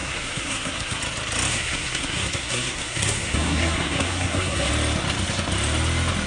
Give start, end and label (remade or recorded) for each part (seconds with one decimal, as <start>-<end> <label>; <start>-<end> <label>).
0.0-1.0 remade; 1.0-1.5 recorded; 1.5-4.7 remade; 4.7-6.3 recorded